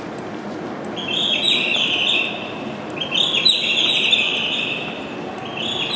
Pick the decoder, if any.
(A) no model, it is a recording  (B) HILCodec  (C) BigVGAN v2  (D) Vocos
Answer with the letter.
A